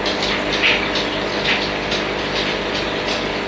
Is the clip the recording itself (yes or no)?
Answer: yes